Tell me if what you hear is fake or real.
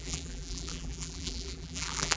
fake